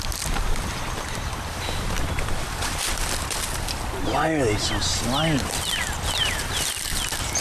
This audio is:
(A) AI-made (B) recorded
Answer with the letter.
B